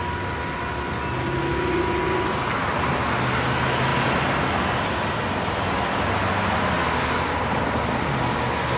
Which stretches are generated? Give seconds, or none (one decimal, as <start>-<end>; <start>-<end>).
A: none